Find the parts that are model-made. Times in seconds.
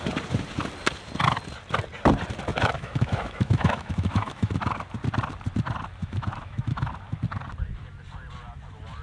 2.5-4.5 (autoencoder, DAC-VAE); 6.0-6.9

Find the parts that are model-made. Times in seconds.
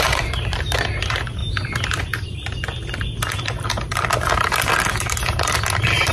0.0-1.4 (vocoder, BigVGAN v2); 2.0-2.6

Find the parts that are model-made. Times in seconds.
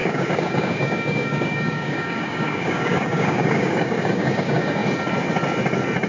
0.0-4.8 (codec, DAC)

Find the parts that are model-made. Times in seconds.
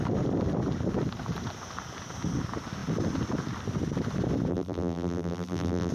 4.5-5.9 (vocoder, BigVGAN v2)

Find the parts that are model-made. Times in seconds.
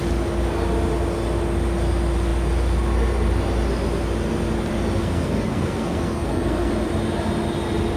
5.0-6.7 (codec, SNAC)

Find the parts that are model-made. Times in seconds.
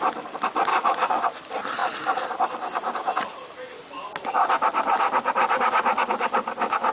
0.7-1.2 (codec, DAC)